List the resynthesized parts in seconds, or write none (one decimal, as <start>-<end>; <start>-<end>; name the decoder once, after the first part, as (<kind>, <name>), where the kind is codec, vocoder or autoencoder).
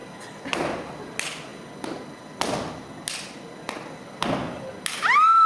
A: none